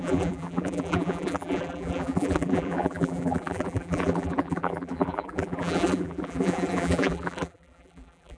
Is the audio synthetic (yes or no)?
yes